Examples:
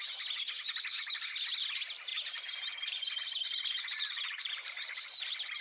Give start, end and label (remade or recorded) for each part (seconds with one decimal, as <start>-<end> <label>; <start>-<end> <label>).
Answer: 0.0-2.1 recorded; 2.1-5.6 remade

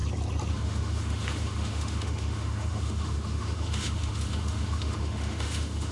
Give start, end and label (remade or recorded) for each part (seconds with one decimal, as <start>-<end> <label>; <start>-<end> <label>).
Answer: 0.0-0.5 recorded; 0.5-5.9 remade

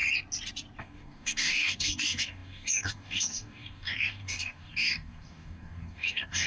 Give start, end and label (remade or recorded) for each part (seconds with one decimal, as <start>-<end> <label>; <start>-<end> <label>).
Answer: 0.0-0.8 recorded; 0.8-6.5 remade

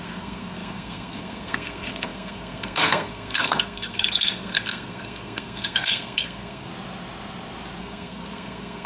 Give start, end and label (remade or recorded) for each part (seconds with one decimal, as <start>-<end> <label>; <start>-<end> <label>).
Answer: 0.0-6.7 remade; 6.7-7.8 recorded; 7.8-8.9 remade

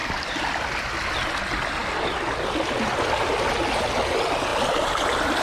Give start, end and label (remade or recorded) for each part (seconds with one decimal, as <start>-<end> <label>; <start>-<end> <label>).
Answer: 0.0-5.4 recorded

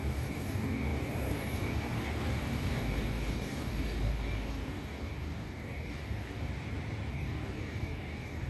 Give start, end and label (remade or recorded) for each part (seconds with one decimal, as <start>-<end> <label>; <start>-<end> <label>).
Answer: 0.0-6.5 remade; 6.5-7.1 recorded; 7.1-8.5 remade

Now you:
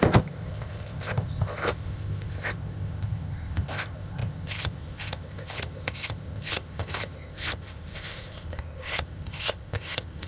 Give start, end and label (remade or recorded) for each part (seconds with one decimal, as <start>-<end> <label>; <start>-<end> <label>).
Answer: 0.0-10.3 remade